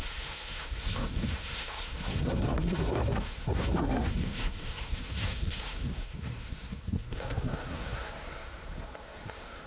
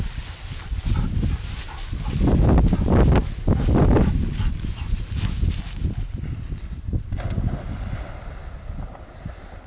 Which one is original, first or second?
second